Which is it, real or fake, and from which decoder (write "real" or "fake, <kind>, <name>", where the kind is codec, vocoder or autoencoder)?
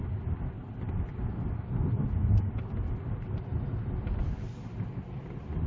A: real